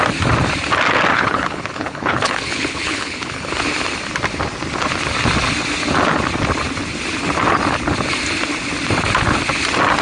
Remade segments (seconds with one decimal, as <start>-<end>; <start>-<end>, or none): 1.1-3.5